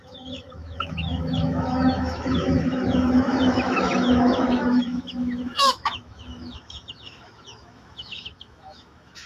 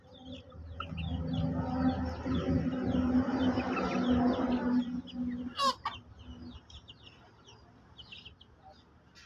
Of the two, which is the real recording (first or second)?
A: second